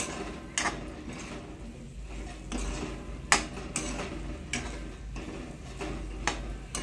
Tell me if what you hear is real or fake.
real